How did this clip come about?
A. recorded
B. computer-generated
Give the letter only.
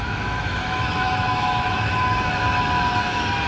B